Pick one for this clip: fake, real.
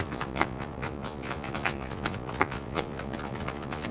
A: fake